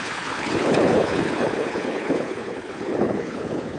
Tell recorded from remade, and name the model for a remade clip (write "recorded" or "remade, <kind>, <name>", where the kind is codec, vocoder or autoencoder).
remade, codec, HILCodec